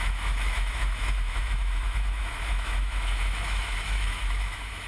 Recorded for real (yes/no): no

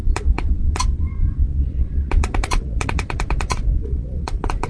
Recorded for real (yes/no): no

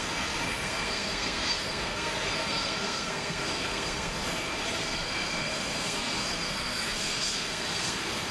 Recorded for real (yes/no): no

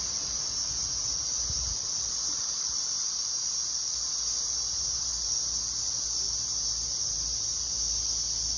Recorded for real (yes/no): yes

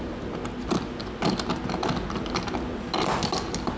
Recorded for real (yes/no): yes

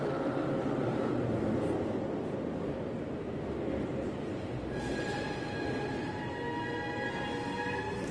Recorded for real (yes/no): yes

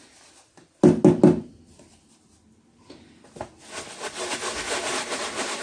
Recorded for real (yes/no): yes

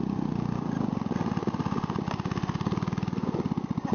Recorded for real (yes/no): yes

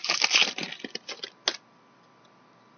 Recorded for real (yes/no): yes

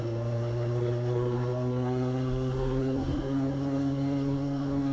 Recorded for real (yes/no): no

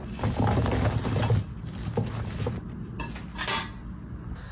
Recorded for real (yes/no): yes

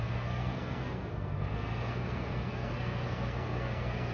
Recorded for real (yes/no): no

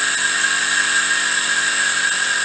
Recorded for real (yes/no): yes